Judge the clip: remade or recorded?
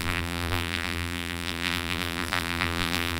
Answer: remade